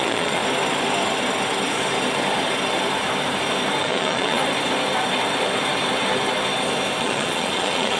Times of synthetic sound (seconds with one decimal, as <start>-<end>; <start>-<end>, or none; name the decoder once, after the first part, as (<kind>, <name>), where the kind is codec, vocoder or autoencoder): 0.0-0.4 (vocoder, Vocos); 3.8-4.4; 7.0-8.0